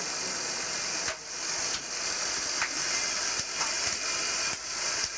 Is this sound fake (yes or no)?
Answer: no